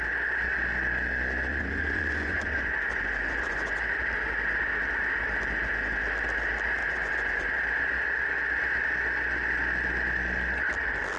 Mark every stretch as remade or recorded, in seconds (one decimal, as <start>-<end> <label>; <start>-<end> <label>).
0.0-1.5 recorded; 1.5-3.8 remade; 3.8-6.8 recorded; 6.8-7.5 remade; 7.5-11.2 recorded